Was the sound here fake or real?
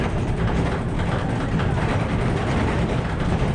real